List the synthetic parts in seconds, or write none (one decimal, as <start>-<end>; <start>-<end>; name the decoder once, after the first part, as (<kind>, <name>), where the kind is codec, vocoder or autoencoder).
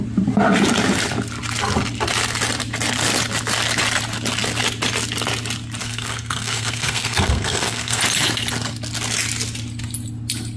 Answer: 5.8-8.0 (codec, SNAC)